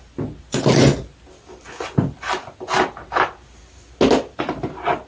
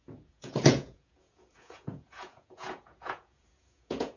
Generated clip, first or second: second